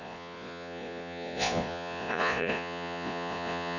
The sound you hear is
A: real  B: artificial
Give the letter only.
B